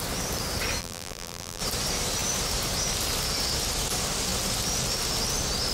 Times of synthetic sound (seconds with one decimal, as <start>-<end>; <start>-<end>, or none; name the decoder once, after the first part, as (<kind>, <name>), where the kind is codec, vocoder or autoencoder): 0.8-1.6 (vocoder, BigVGAN v2)